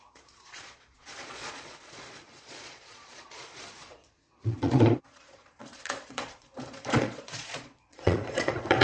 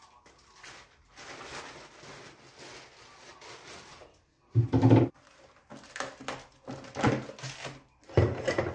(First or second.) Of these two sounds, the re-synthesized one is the first